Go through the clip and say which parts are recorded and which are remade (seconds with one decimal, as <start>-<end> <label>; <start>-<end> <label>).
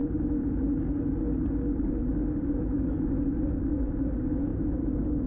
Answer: 0.0-5.3 recorded